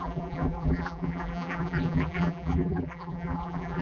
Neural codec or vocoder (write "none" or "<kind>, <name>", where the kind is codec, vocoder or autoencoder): vocoder, BigVGAN v2